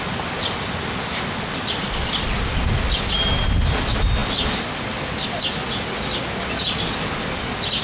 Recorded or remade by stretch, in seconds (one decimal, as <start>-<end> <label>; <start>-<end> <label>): 0.0-7.8 recorded